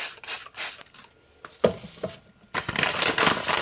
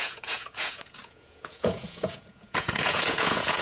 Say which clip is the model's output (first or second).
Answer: second